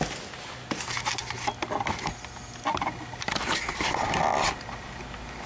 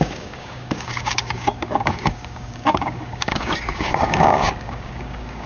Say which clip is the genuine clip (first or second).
first